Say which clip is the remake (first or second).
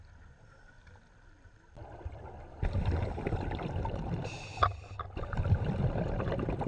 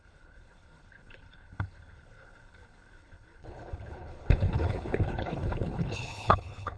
second